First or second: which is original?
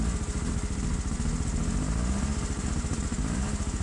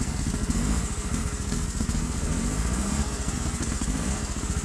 first